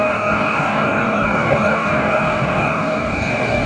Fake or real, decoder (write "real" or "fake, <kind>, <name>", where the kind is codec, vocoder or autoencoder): fake, codec, DAC